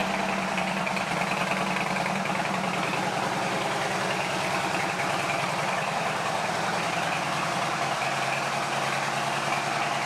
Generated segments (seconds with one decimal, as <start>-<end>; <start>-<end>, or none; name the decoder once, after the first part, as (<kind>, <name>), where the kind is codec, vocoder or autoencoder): 0.0-10.1 (vocoder, BigVGAN v2)